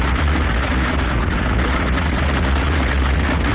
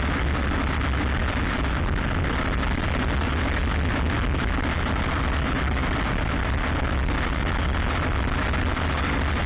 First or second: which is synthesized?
first